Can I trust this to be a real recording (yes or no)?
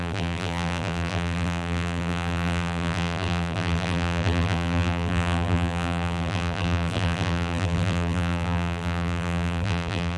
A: no